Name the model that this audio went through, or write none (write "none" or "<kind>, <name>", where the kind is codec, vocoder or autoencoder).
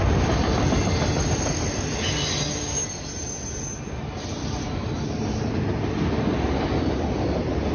none